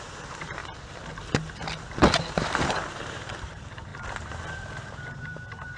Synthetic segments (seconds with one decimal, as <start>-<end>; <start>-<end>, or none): 0.0-0.6; 2.2-3.9; 4.9-5.8